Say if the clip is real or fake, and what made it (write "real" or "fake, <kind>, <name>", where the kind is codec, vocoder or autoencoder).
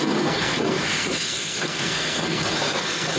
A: fake, codec, SNAC